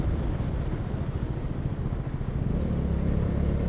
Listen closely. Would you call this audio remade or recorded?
recorded